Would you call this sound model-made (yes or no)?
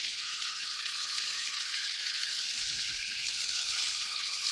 yes